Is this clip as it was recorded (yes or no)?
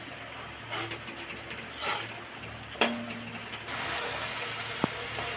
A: yes